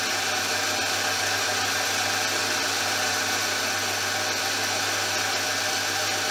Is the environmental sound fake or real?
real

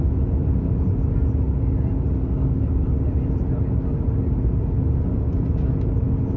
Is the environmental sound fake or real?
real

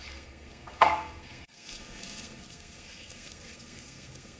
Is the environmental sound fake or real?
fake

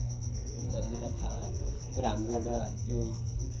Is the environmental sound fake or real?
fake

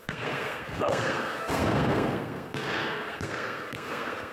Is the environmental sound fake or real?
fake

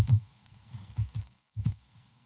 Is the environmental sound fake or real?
fake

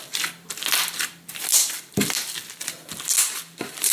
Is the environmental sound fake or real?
real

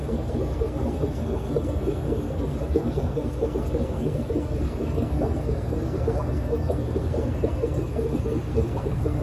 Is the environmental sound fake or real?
fake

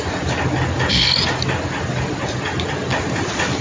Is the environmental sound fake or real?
real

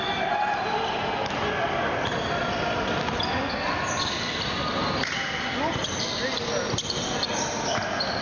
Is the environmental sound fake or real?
real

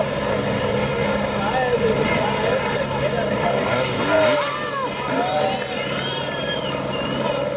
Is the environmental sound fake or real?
real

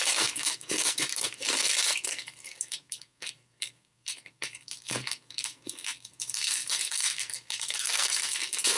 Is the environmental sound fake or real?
fake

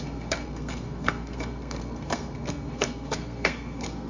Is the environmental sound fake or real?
fake